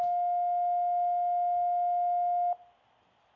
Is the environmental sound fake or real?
real